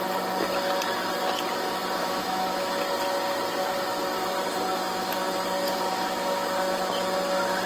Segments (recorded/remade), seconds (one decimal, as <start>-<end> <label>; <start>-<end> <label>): 0.0-2.0 recorded; 2.0-2.7 remade; 2.7-7.7 recorded